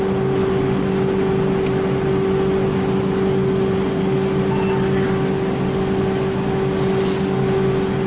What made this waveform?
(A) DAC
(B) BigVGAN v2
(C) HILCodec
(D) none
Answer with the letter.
D